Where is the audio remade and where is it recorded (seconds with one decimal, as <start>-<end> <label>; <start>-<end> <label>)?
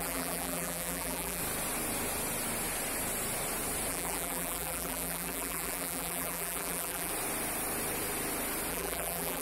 0.0-1.4 remade; 1.4-3.9 recorded; 3.9-7.1 remade; 7.1-8.7 recorded; 8.7-9.4 remade